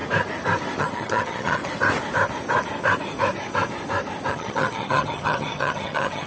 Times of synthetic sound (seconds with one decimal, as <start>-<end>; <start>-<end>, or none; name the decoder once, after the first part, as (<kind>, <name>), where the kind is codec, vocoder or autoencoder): 0.8-1.6 (vocoder, HiFi-GAN); 4.3-6.3